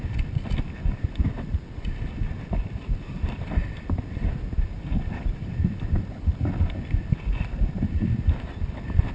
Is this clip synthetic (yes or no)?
no